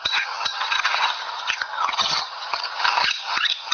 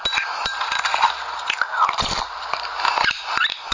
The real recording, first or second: second